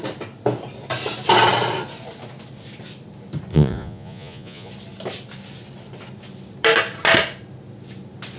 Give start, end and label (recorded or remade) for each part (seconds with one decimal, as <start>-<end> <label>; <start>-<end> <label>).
0.0-3.5 recorded; 3.5-4.7 remade; 4.7-8.4 recorded